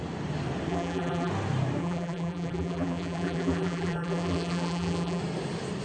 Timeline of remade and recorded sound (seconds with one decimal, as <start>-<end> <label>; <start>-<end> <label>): 0.0-0.7 recorded; 0.7-1.3 remade; 1.3-1.8 recorded; 1.8-5.2 remade; 5.2-5.8 recorded